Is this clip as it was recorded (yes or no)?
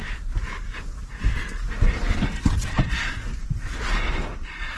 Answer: yes